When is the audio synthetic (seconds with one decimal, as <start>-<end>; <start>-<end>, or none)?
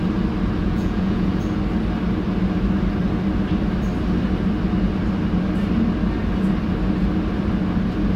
0.6-1.4